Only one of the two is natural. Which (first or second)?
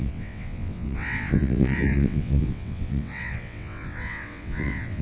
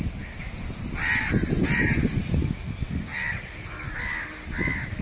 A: second